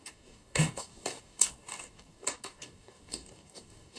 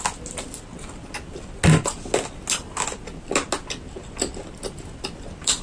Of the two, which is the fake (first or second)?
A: first